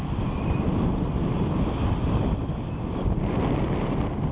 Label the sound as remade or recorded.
recorded